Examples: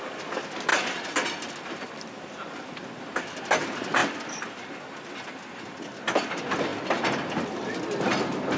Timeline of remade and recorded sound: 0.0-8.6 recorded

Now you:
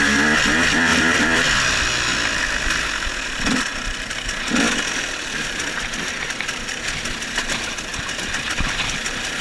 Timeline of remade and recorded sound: 0.0-9.4 recorded

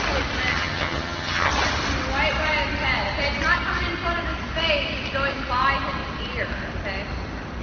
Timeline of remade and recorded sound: 0.0-0.5 recorded; 0.5-1.5 remade; 1.5-7.6 recorded

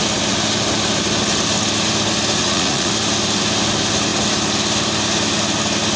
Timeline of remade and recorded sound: 0.0-2.4 recorded; 2.4-2.9 remade; 2.9-6.0 recorded

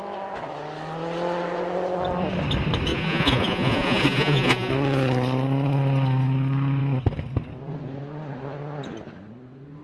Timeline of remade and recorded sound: 0.0-2.9 recorded; 2.9-4.7 remade; 4.7-9.8 recorded

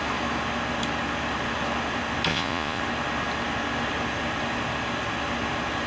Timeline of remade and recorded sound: 0.0-2.3 recorded; 2.3-2.8 remade; 2.8-5.9 recorded

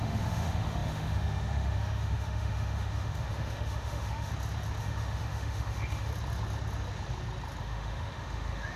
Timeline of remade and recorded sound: 0.0-4.3 remade; 4.3-4.8 recorded; 4.8-6.1 remade; 6.1-7.6 recorded; 7.6-8.8 remade